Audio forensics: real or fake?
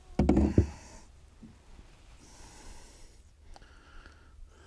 real